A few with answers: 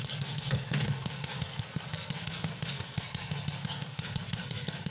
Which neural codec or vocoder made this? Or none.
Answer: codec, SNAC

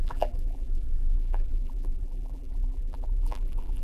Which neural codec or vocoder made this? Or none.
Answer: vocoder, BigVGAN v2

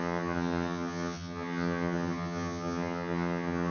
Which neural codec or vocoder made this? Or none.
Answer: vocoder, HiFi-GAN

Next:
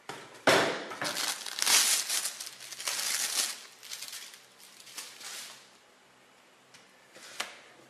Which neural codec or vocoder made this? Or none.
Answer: none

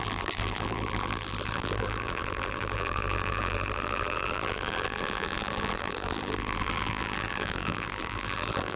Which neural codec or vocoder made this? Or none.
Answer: vocoder, BigVGAN v2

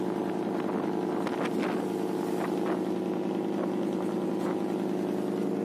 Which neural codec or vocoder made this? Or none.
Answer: none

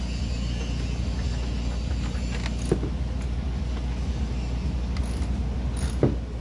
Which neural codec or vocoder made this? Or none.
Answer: none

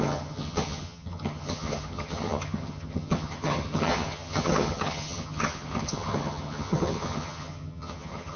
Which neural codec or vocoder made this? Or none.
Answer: vocoder, HiFi-GAN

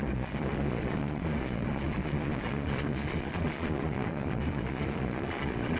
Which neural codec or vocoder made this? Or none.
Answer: vocoder, Vocos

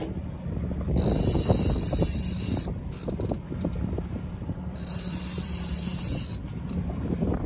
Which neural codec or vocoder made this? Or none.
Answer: vocoder, BigVGAN v2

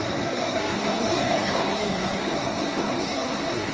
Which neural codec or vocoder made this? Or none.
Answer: codec, SNAC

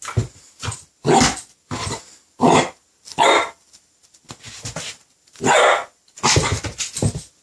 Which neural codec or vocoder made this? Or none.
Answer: none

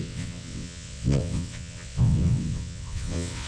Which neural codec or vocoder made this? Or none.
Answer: vocoder, WaveNeXt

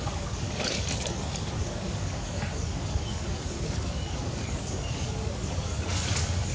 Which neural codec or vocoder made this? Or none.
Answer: codec, DAC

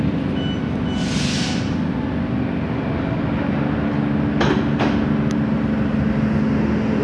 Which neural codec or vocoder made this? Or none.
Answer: none